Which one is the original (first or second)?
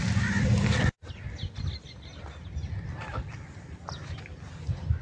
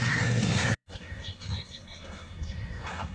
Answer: first